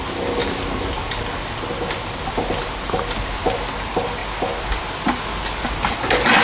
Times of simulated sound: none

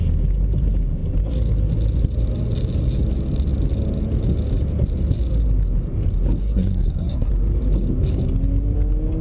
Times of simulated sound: 6.4-7.3 (codec, SNAC)

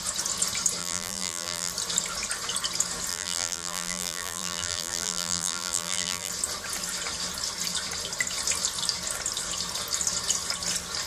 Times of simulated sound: 0.8-1.7 (vocoder, BigVGAN v2); 3.1-6.3